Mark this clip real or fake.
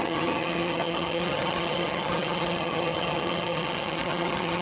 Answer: fake